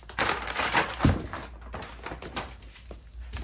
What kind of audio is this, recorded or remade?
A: recorded